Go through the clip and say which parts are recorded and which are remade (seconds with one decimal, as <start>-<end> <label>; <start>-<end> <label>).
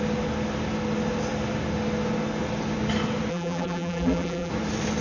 0.0-3.3 recorded; 3.3-4.5 remade; 4.5-5.0 recorded